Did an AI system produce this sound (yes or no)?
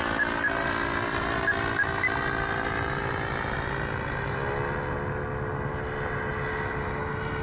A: no